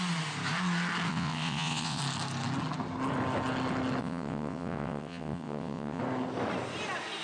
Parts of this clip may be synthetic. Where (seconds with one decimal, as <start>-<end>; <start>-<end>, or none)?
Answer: 1.1-2.0; 4.0-6.0